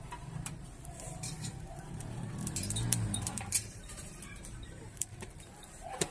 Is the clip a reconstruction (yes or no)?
yes